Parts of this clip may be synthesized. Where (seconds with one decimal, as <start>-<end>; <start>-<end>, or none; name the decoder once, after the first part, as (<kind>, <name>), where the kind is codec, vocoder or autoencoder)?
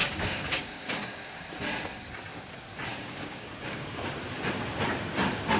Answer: 0.0-1.5 (codec, DAC); 2.9-4.0